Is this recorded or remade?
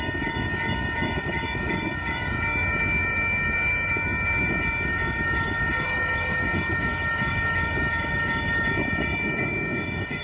remade